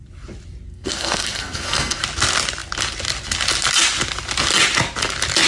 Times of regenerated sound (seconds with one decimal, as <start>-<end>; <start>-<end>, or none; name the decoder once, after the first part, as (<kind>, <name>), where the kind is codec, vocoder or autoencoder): 0.7-2.0 (codec, SNAC)